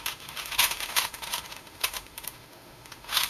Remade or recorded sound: remade